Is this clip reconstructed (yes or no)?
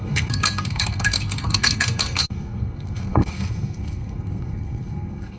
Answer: yes